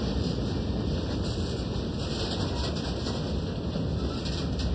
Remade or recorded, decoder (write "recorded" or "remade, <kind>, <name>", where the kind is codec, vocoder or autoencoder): recorded